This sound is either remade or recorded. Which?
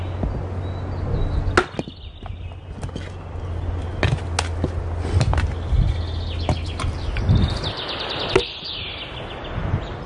recorded